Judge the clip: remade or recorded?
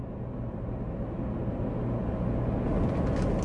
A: recorded